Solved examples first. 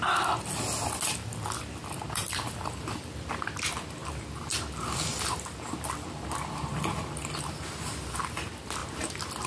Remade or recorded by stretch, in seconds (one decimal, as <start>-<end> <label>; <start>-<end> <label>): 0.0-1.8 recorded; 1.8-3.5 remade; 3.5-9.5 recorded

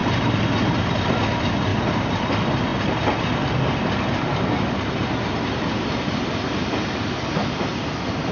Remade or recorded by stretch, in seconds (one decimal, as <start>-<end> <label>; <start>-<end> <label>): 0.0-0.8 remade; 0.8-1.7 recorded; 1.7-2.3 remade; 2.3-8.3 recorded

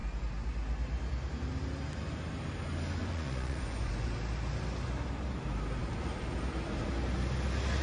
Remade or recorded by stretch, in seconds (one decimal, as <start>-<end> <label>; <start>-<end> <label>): 0.0-3.0 recorded; 3.0-4.1 remade; 4.1-7.8 recorded